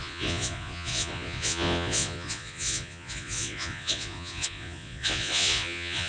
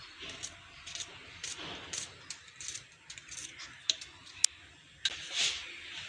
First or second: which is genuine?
second